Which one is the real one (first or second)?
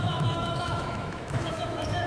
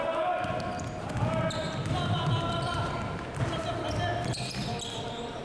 second